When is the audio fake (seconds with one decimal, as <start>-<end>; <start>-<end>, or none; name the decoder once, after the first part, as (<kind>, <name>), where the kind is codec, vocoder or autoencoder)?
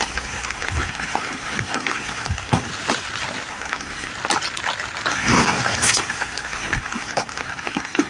0.0-2.7 (codec, SNAC); 3.5-4.1; 5.1-8.1